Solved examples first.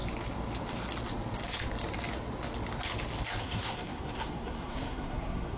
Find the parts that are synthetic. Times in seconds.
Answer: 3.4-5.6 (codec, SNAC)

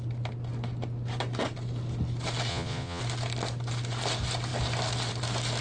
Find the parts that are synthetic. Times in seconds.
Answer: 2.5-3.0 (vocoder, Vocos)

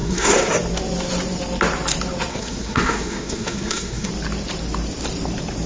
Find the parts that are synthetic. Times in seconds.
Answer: 0.0-0.5 (codec, SNAC); 2.3-4.1

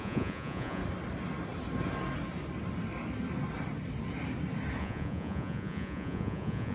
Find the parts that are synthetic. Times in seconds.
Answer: 0.0-0.8 (vocoder, Vocos); 4.8-6.7